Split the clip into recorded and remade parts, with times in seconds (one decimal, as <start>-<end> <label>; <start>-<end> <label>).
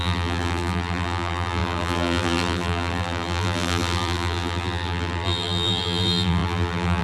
0.0-7.0 remade